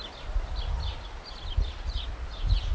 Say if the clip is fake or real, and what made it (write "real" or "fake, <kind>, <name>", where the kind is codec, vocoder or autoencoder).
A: real